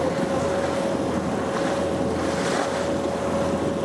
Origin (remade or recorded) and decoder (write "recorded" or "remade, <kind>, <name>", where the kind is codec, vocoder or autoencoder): recorded